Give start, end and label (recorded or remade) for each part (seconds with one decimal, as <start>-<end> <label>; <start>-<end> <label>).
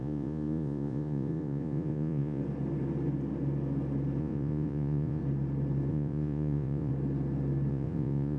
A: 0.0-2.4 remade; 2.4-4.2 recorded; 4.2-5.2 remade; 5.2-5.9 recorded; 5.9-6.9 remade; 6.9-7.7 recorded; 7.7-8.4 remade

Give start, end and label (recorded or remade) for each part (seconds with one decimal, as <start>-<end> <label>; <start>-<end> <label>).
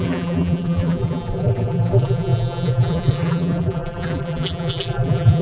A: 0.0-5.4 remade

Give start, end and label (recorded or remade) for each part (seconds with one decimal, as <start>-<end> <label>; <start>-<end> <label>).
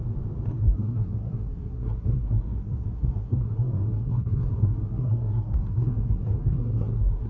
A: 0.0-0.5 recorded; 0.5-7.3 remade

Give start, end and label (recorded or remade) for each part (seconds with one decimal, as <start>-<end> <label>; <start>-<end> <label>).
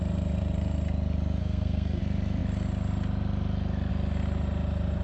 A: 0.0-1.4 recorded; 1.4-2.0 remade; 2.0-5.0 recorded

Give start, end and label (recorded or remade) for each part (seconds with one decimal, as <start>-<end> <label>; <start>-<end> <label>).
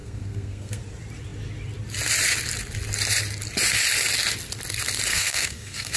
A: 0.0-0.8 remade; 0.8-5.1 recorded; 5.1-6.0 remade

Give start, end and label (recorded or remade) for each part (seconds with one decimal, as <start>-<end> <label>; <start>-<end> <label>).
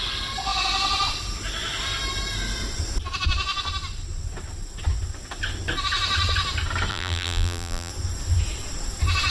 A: 0.0-6.9 recorded; 6.9-7.9 remade; 7.9-9.3 recorded